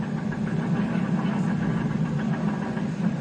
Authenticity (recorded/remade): recorded